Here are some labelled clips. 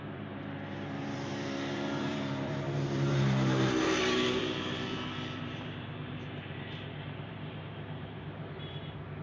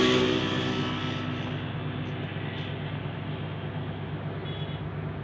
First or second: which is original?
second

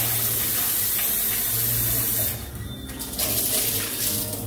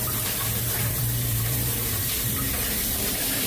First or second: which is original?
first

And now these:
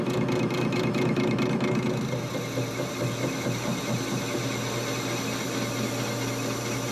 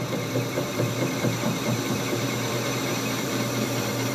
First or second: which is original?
first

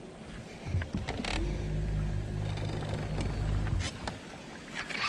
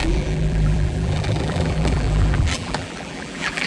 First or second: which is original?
first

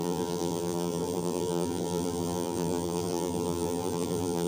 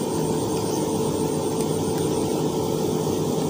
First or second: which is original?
second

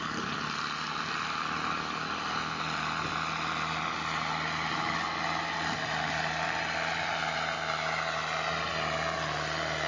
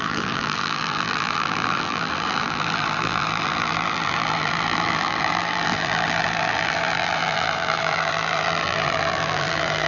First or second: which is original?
first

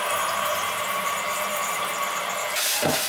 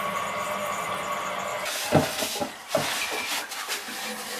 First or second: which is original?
second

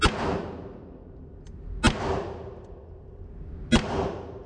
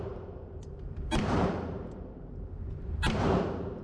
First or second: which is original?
first